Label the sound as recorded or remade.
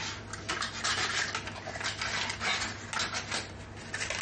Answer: recorded